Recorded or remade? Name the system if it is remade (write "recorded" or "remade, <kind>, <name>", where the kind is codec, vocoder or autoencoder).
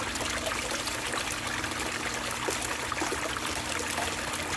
recorded